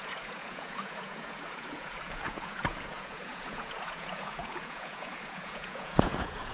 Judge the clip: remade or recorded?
remade